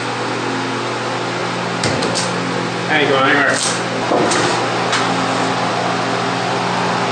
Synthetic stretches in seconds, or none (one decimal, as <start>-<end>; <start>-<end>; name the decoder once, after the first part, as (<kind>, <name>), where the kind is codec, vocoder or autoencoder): none